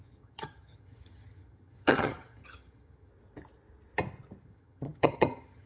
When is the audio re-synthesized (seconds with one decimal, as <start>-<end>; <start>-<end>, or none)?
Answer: 0.0-3.1; 4.4-5.7